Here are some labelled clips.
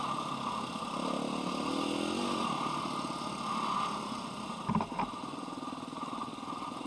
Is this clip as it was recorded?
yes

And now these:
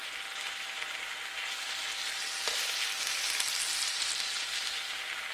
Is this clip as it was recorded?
yes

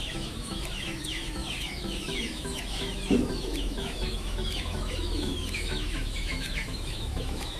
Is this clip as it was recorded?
no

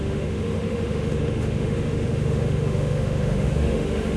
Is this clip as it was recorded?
no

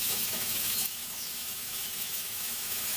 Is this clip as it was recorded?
no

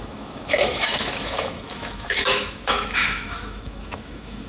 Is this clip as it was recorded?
no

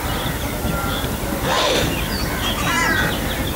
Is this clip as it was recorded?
yes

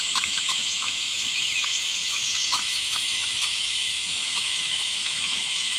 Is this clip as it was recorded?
no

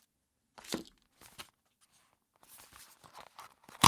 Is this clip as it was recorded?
yes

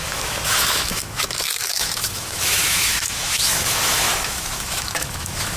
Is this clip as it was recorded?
no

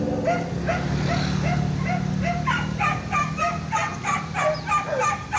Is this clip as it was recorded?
yes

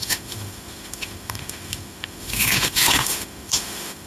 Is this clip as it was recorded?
no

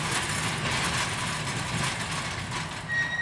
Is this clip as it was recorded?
yes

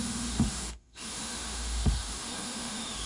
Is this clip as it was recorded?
no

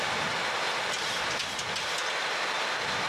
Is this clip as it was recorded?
yes